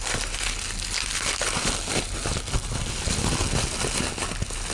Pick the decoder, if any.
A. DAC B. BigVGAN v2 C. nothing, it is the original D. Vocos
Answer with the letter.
C